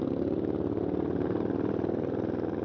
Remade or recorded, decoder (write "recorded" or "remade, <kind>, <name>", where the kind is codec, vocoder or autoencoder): recorded